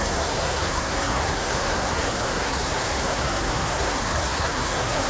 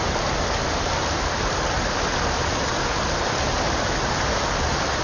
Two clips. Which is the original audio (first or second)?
second